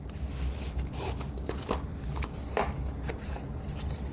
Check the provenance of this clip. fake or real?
real